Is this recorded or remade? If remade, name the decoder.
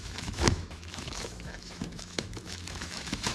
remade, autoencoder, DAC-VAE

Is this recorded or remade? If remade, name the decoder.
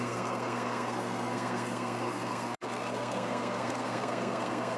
remade, codec, SNAC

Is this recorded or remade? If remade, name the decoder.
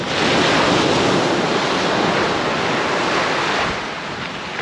recorded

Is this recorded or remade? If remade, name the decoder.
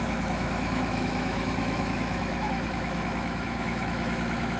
remade, autoencoder, DAC-VAE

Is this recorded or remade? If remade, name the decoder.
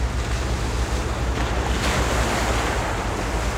recorded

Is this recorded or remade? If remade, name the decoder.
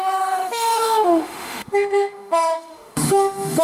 remade, autoencoder, DAC-VAE